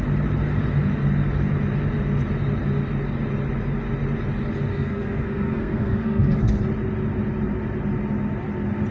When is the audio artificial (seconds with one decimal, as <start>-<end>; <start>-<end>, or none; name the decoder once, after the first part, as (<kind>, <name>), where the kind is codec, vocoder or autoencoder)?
4.7-6.5 (codec, SNAC)